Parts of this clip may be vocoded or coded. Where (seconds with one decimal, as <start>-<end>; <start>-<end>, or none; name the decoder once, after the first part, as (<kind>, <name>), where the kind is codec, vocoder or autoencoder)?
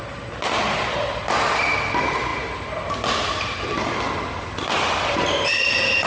none